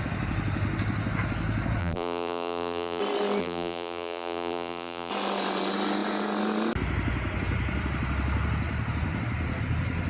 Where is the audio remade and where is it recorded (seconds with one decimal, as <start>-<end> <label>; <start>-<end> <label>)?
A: 0.0-1.8 recorded; 1.8-3.0 remade; 3.0-3.4 recorded; 3.4-5.1 remade; 5.1-10.1 recorded

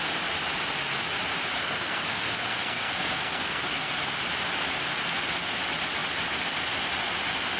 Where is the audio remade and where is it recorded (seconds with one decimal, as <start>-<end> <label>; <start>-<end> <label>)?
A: 0.0-1.6 recorded; 1.6-3.9 remade; 3.9-7.6 recorded

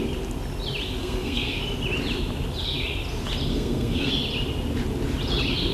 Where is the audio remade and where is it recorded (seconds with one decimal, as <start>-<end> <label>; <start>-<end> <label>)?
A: 0.0-1.0 recorded; 1.0-1.6 remade; 1.6-3.5 recorded; 3.5-4.1 remade; 4.1-5.7 recorded

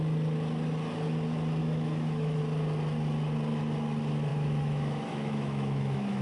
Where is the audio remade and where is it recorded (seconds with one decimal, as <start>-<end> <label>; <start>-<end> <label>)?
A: 0.0-1.6 recorded; 1.6-2.4 remade; 2.4-4.3 recorded; 4.3-6.2 remade

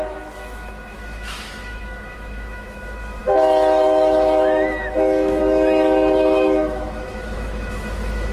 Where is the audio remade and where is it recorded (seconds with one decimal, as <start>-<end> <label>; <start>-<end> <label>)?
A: 0.0-8.3 remade